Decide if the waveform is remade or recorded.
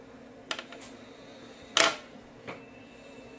recorded